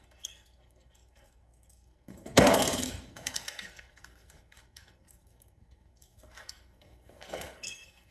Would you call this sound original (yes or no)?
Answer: no